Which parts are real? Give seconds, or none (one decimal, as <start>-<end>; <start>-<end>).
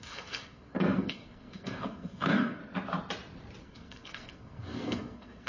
2.6-3.6